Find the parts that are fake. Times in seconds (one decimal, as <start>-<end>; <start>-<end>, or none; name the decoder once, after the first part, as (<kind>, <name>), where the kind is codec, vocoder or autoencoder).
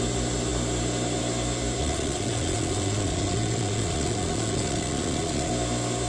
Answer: 1.8-5.5 (vocoder, Vocos)